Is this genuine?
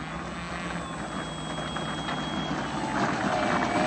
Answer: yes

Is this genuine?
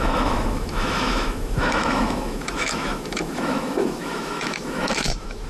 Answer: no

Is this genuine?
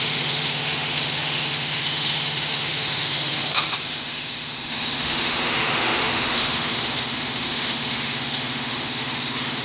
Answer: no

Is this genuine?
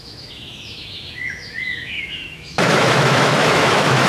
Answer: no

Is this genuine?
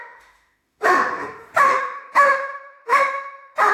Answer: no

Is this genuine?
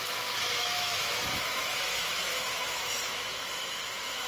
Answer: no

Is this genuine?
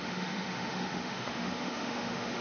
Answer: no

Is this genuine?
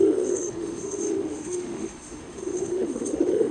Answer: no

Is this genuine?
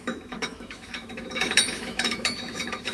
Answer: no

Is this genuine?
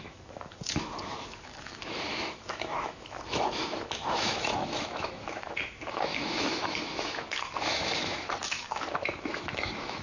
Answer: no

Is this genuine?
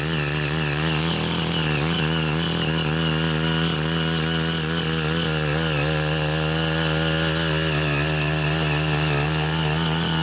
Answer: yes